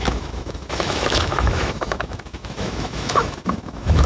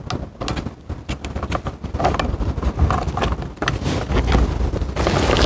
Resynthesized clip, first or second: first